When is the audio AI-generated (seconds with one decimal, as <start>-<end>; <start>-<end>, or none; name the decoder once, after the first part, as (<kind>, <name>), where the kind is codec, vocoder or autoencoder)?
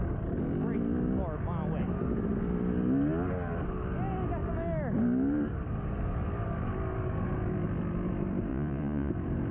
8.5-9.1 (vocoder, Vocos)